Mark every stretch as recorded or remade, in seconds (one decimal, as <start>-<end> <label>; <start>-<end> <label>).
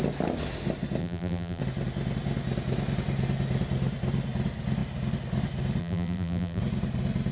0.0-1.0 recorded; 1.0-1.6 remade; 1.6-5.8 recorded; 5.8-6.6 remade; 6.6-7.3 recorded